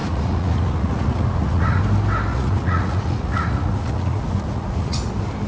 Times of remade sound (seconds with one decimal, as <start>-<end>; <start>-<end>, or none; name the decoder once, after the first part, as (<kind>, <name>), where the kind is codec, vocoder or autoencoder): 0.0-1.8 (vocoder, Vocos); 2.3-5.1